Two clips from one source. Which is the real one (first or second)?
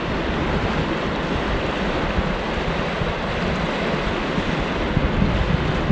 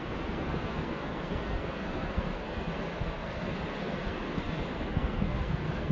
first